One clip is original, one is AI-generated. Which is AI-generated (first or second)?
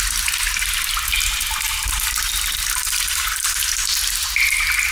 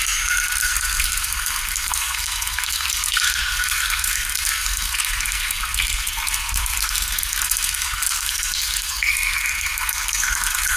second